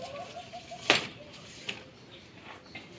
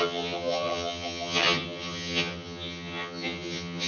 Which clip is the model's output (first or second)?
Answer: second